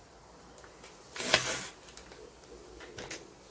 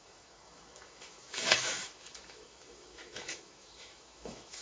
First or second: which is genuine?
first